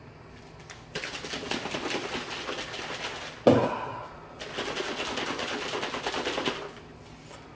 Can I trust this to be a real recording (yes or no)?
yes